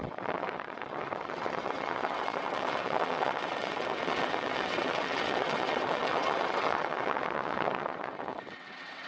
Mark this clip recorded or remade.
remade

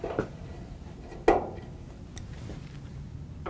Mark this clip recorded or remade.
recorded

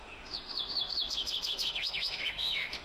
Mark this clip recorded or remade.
remade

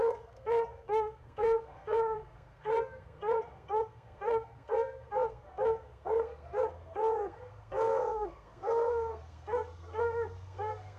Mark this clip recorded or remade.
remade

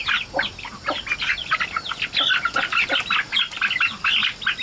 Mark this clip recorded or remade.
recorded